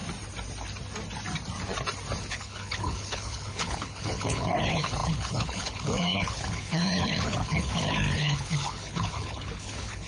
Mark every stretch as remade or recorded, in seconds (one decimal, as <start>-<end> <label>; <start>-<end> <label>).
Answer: 0.0-2.3 recorded; 2.3-10.1 remade